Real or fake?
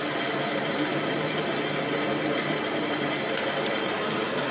fake